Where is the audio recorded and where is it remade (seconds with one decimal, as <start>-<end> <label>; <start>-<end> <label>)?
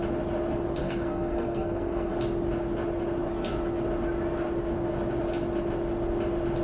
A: 0.0-0.8 recorded; 0.8-2.1 remade; 2.1-6.6 recorded